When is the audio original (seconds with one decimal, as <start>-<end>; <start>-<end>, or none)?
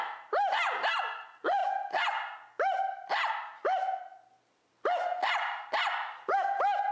0.0-6.9